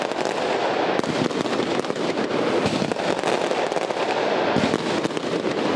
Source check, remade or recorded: recorded